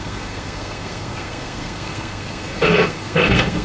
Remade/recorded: remade